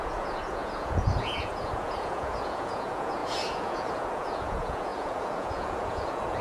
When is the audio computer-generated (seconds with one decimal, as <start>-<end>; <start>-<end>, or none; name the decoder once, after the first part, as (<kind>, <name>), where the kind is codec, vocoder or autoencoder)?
0.0-6.4 (vocoder, Vocos)